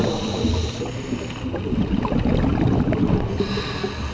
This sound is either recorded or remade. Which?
recorded